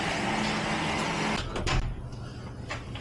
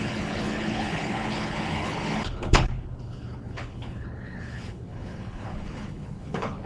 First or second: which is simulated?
second